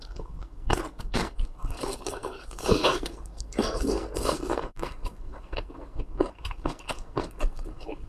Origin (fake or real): fake